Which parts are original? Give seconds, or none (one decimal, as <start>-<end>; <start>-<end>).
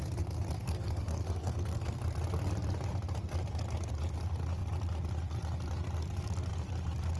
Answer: 0.0-0.6; 2.0-7.2